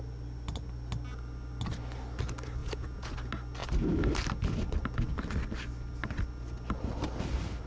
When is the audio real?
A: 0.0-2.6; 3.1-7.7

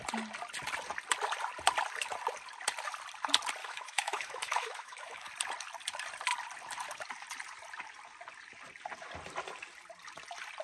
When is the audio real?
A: 0.0-3.6; 5.3-10.6

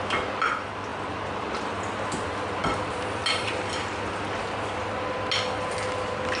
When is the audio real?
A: 0.0-0.9; 1.7-2.6; 3.5-6.4